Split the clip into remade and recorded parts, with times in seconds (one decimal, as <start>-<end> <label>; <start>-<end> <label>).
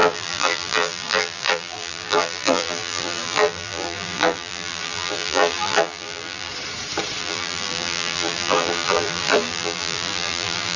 0.0-6.5 remade; 6.5-7.2 recorded; 7.2-10.8 remade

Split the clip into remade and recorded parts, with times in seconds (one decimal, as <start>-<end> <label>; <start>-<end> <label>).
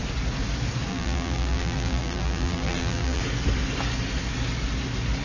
0.0-0.9 recorded; 0.9-3.2 remade; 3.2-5.2 recorded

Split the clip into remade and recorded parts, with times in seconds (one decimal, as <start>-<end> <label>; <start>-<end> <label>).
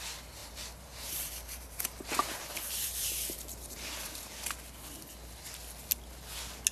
0.0-0.4 recorded; 0.4-4.2 remade; 4.2-6.7 recorded